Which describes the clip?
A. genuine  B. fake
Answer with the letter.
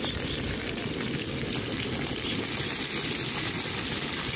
A